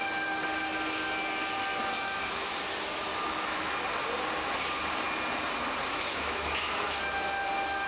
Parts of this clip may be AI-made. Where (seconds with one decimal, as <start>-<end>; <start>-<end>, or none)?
1.8-2.5; 3.1-3.7; 5.9-7.0

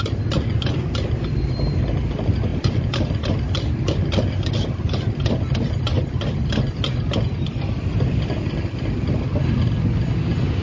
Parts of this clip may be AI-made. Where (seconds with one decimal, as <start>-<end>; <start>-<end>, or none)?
none